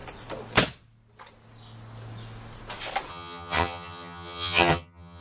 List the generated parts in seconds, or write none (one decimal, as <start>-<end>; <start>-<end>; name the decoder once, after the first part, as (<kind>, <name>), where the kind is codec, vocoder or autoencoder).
3.1-5.2 (vocoder, HiFi-GAN)